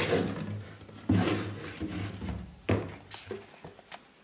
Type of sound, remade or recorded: recorded